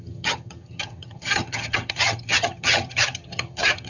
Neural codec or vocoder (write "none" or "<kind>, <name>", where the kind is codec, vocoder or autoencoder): vocoder, HiFi-GAN